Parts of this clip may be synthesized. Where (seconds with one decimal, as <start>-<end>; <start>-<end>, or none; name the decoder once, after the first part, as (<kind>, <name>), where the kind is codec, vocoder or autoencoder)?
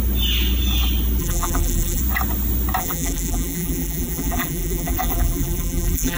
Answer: 1.2-2.0 (vocoder, BigVGAN v2); 2.8-6.2